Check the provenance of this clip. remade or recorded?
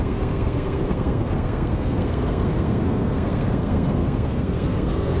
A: remade